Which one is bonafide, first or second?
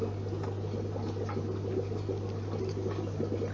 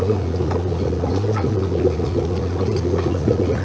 first